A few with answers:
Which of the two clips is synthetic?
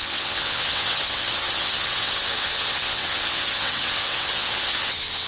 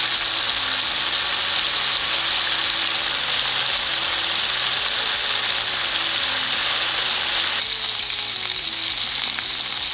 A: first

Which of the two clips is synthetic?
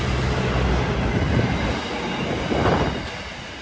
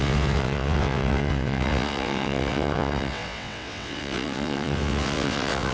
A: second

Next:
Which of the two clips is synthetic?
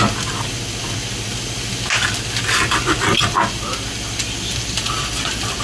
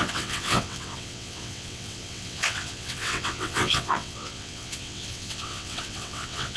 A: second